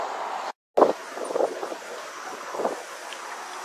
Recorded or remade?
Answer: recorded